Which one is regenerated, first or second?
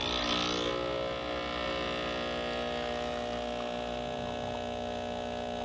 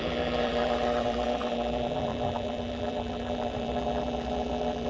second